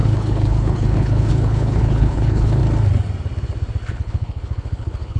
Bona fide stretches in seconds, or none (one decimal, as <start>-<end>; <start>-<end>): 2.6-3.9